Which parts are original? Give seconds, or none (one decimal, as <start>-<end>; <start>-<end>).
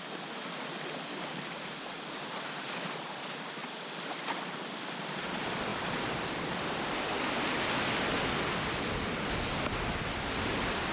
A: 0.0-5.7; 7.4-10.9